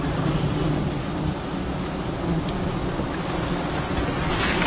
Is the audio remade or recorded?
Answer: recorded